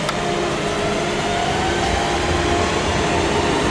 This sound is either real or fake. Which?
fake